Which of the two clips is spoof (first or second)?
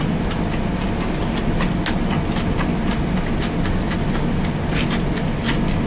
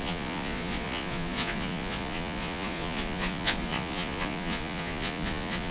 second